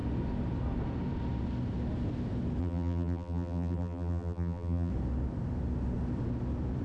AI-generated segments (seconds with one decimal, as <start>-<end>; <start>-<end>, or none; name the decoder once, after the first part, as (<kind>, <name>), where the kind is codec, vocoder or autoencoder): 2.6-4.9 (vocoder, BigVGAN v2)